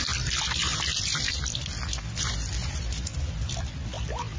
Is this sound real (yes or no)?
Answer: yes